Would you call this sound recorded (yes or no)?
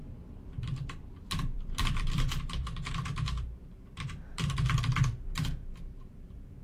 no